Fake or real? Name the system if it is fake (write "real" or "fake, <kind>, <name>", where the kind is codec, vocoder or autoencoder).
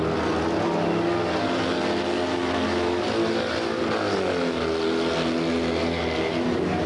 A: real